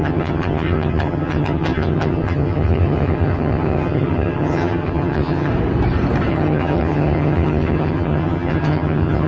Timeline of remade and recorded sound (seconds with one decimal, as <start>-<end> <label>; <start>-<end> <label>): 0.0-5.5 remade; 5.5-6.3 recorded; 6.3-9.3 remade